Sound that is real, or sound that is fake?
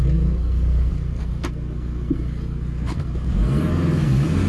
fake